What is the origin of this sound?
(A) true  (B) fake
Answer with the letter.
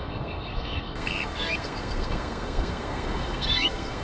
B